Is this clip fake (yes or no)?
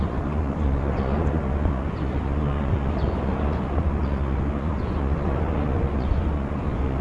yes